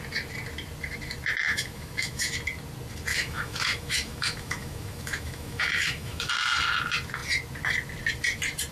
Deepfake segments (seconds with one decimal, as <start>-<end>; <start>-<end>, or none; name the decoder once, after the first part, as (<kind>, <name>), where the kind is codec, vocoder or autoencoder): 1.4-2.3 (autoencoder, DAC-VAE); 3.1-6.3